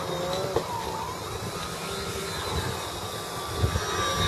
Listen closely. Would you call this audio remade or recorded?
recorded